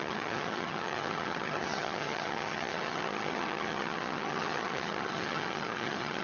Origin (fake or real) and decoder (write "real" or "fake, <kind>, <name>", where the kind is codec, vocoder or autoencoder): fake, vocoder, HiFi-GAN